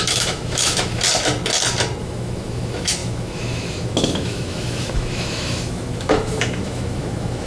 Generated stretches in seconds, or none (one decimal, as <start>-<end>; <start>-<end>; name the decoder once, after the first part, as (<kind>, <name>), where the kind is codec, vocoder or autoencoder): 0.0-1.0 (autoencoder, DAC-VAE); 2.0-7.5